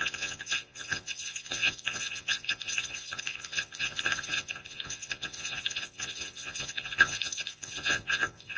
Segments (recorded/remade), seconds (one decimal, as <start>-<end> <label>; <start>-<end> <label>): 0.0-8.6 remade